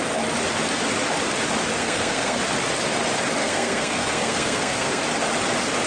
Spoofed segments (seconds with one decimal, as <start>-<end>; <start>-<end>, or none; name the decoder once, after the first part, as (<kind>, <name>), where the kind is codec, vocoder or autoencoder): 1.8-2.4 (codec, SNAC); 3.4-5.0